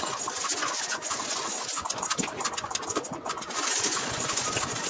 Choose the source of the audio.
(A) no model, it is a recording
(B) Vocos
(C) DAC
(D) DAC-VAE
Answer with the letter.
B